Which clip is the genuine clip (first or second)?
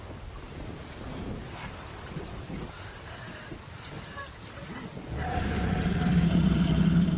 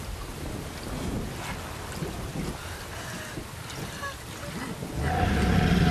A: second